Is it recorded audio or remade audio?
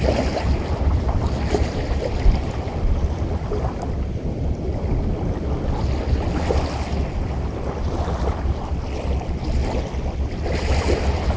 recorded